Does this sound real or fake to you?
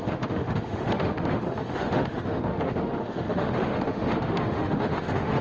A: fake